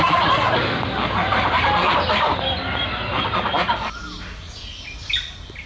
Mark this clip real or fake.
real